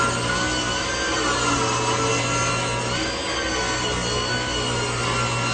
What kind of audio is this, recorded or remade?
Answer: recorded